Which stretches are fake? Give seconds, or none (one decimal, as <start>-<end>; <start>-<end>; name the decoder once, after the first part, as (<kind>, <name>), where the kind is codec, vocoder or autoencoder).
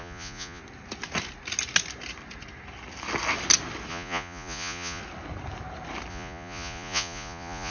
0.0-0.6 (vocoder, Vocos); 3.9-5.0; 6.1-7.7